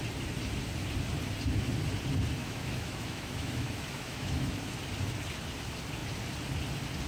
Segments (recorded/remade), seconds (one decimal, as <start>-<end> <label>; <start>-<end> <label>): 0.0-2.4 recorded; 2.4-4.6 remade; 4.6-7.1 recorded